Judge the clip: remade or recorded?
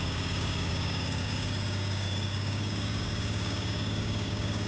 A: remade